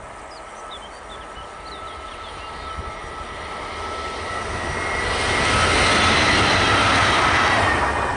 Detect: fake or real real